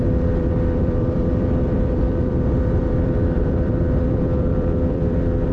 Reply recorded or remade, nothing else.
remade